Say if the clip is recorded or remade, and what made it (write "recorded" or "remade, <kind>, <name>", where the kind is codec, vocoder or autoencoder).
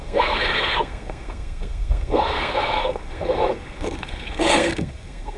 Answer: remade, codec, SNAC